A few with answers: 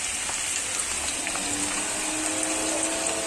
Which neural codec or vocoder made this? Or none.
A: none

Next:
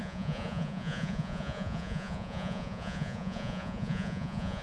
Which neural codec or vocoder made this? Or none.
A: vocoder, Vocos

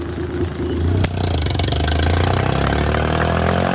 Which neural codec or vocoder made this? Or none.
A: none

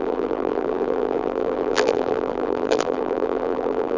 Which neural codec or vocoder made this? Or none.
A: vocoder, BigVGAN v2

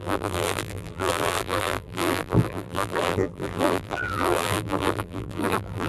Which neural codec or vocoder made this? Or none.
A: vocoder, BigVGAN v2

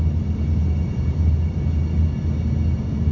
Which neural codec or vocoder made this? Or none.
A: none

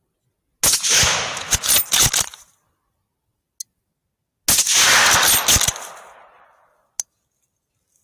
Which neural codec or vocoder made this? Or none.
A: none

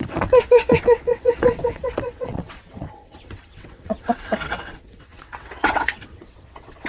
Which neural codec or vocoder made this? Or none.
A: vocoder, WaveNeXt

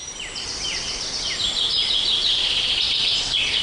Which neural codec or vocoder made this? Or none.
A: vocoder, BigVGAN v2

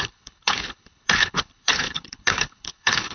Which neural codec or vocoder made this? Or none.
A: codec, HILCodec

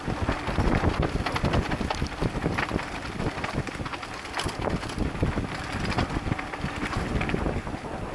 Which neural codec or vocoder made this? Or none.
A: none